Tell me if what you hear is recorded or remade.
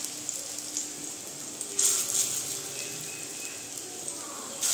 recorded